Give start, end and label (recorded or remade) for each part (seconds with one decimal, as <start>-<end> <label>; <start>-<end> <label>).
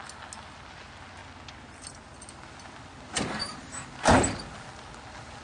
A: 0.0-5.4 recorded